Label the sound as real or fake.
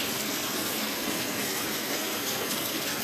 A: fake